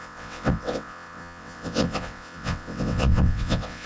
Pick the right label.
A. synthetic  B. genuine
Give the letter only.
A